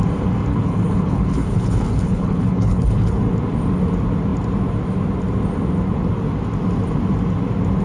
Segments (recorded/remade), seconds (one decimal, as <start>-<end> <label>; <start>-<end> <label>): 0.0-0.5 recorded; 0.5-3.2 remade; 3.2-7.8 recorded